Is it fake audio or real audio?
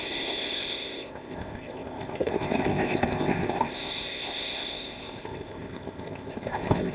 fake